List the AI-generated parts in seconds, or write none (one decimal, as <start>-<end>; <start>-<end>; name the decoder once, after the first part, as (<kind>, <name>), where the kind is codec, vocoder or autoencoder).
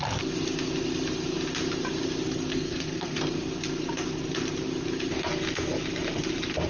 2.5-3.2 (codec, SNAC)